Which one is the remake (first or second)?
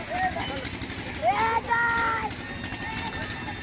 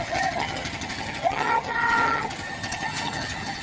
second